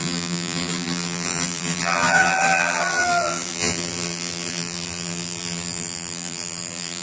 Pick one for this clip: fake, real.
fake